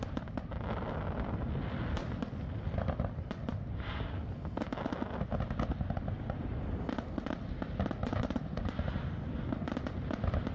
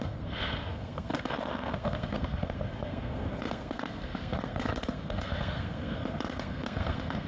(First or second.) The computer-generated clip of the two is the second